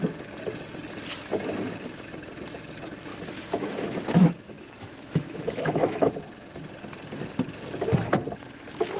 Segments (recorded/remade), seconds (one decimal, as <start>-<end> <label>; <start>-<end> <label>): 0.0-3.1 recorded; 3.1-6.1 remade; 6.1-9.0 recorded